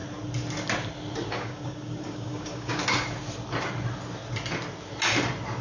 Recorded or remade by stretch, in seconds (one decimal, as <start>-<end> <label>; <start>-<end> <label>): 0.0-1.3 recorded; 1.3-2.8 remade; 2.8-5.6 recorded